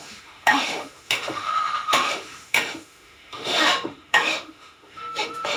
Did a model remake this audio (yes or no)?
yes